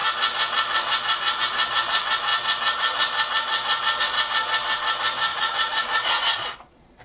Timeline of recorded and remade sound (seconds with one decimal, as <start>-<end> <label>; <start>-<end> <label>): 0.0-5.3 recorded; 5.3-7.0 remade